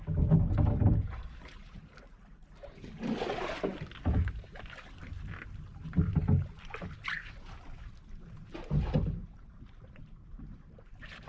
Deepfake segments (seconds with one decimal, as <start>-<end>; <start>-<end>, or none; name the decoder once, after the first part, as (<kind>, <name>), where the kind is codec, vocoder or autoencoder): none